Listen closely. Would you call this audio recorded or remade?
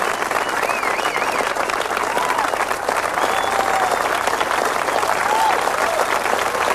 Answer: recorded